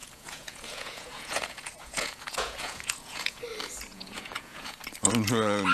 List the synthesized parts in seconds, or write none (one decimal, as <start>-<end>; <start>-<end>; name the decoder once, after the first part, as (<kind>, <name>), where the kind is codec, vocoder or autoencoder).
0.0-3.4 (vocoder, Vocos); 3.9-4.8